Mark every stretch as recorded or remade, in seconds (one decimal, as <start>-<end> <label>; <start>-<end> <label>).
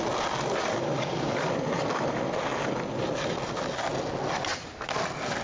0.0-0.7 recorded; 0.7-1.5 remade; 1.5-5.4 recorded